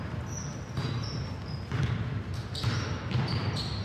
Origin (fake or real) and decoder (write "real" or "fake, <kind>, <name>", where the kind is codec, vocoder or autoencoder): real